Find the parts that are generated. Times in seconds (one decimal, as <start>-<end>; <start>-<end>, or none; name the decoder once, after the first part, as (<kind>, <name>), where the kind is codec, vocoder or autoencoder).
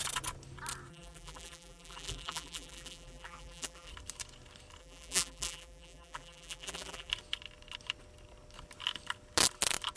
0.9-3.9 (vocoder, BigVGAN v2); 4.8-7.1